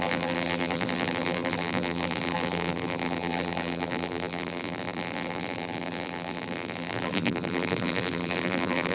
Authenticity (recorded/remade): remade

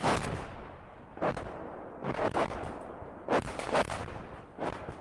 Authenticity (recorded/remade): recorded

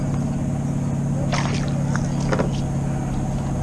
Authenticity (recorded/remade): recorded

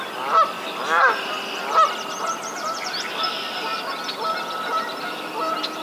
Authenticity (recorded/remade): recorded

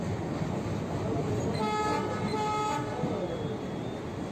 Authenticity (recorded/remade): recorded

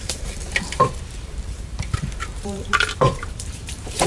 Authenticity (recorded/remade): remade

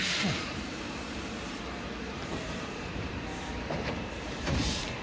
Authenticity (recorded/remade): remade